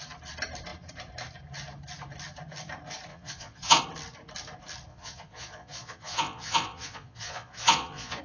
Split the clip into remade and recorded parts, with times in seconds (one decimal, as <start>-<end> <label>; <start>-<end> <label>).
0.0-3.1 recorded; 3.1-3.8 remade; 3.8-4.9 recorded; 4.9-8.2 remade